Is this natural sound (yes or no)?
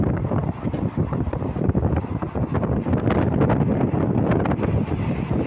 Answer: yes